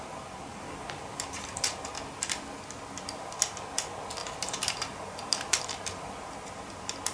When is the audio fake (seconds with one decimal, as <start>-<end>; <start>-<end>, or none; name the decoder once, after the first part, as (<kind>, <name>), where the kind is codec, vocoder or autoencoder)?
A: 0.5-1.9 (vocoder, BigVGAN v2); 4.2-6.1